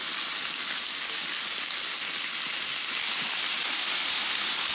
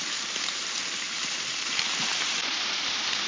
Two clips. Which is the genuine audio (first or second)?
first